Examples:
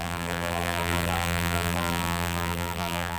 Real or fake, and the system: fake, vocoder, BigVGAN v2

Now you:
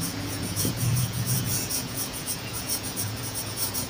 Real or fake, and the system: fake, vocoder, Vocos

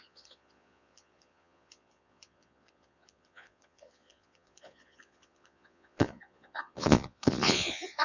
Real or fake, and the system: fake, vocoder, Vocos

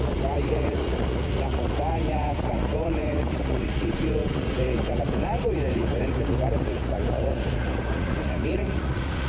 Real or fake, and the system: fake, vocoder, Vocos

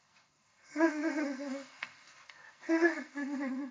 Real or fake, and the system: fake, codec, SNAC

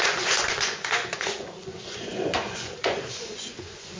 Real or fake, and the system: fake, vocoder, Vocos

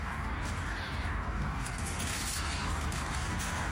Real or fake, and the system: fake, codec, DAC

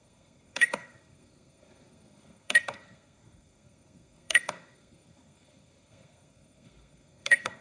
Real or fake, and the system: fake, codec, SNAC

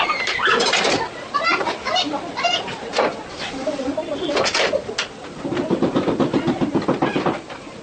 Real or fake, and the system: real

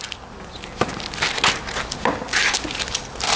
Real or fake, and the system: real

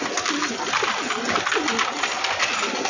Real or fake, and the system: real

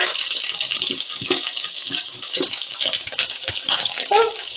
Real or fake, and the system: fake, codec, DAC